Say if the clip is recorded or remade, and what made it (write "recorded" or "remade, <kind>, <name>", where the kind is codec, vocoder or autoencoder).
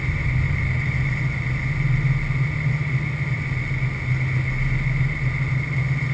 recorded